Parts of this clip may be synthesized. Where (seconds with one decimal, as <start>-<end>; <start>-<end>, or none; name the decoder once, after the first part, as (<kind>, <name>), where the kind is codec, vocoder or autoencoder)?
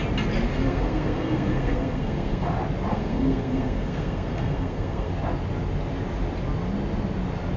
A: 0.5-2.5 (codec, SNAC); 2.9-5.1